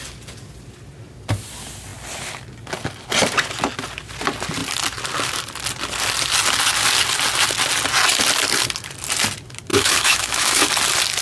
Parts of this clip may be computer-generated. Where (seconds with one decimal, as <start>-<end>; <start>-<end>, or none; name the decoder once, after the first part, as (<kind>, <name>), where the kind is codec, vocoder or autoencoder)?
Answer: 9.7-10.7 (autoencoder, DAC-VAE)